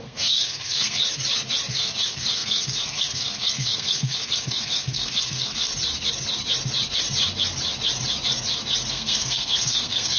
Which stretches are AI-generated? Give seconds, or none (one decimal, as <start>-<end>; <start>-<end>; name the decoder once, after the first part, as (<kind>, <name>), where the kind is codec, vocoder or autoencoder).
0.0-1.0 (codec, SNAC); 1.7-5.7; 8.9-10.2